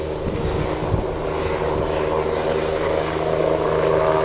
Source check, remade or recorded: recorded